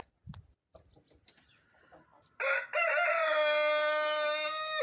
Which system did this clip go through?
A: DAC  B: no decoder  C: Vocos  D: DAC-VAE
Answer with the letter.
B